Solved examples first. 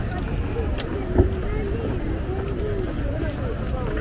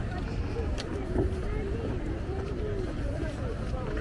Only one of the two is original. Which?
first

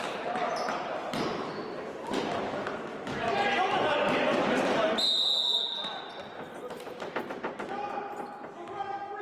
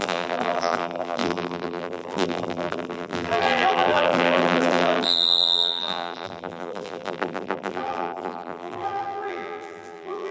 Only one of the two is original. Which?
first